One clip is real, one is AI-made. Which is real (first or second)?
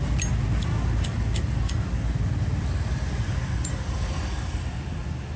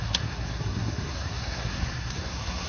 first